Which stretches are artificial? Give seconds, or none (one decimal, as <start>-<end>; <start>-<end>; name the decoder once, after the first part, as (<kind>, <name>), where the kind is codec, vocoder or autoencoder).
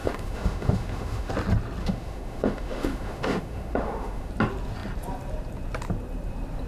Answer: 0.0-1.3 (autoencoder, DAC-VAE); 1.8-4.3